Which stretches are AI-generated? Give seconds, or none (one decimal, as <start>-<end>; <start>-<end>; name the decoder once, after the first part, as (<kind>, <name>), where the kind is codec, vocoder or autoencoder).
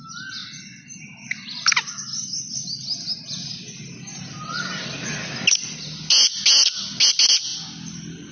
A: none